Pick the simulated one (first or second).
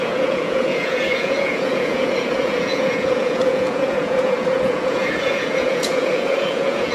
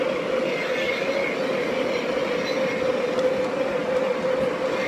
first